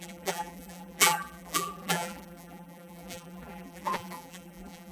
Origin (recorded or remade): remade